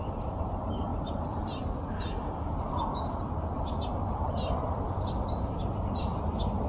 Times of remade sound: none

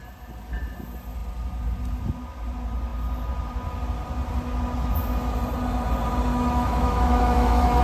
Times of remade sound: 6.3-7.8 (autoencoder, DAC-VAE)

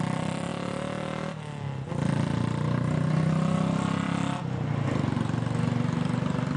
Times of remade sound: none

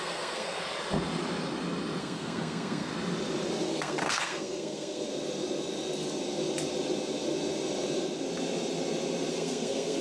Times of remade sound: 0.0-0.6 (codec, SNAC); 2.0-2.9; 3.7-5.1; 9.3-10.0

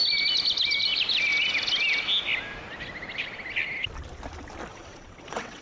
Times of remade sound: 4.7-5.6 (vocoder, WaveNeXt)

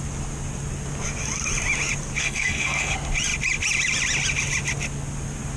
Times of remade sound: 2.2-2.9 (codec, SNAC)